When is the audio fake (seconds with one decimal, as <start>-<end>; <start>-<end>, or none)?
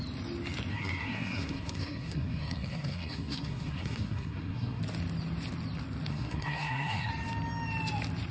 0.7-4.8; 6.1-7.1